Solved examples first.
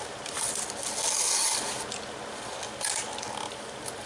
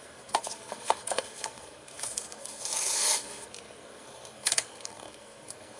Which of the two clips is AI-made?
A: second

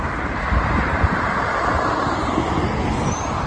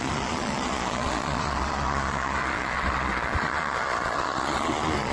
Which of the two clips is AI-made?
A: second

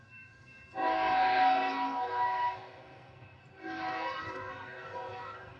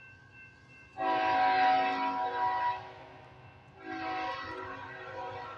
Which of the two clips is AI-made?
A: first